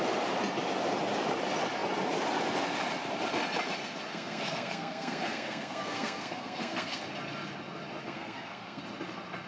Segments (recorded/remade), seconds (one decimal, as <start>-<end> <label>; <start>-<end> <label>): 0.0-4.1 recorded; 4.1-7.0 remade; 7.0-8.0 recorded; 8.0-8.8 remade; 8.8-9.5 recorded